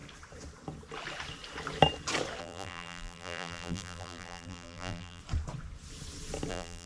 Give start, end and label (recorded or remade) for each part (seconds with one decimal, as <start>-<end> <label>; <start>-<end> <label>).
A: 0.0-2.4 recorded; 2.4-5.2 remade; 5.2-6.5 recorded; 6.5-6.9 remade